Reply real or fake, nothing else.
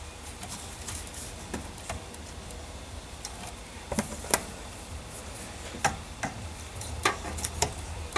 real